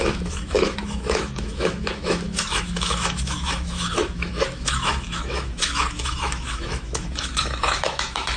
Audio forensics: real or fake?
fake